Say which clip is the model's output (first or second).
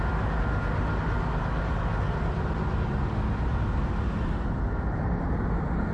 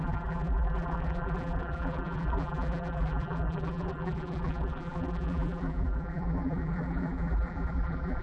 second